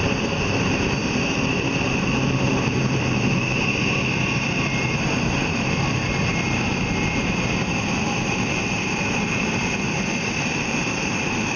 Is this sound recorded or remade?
remade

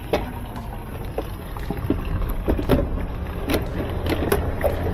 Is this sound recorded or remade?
recorded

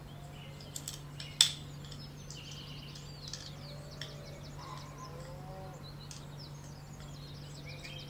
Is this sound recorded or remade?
recorded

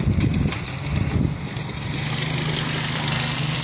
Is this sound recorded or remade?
recorded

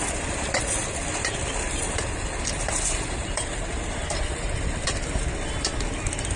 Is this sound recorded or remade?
remade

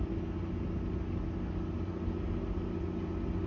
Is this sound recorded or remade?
recorded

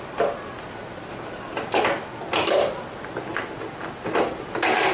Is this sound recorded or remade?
recorded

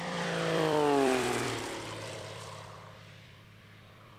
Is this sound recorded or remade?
remade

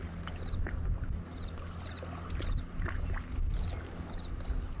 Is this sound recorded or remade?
recorded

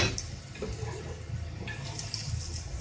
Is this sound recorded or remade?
recorded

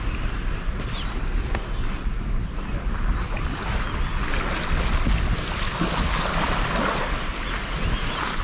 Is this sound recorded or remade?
recorded